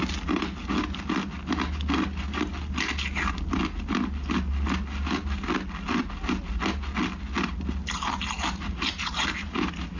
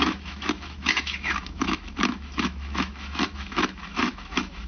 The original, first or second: first